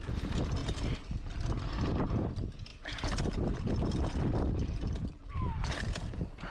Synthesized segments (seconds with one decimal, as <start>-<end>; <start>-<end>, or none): 0.6-2.1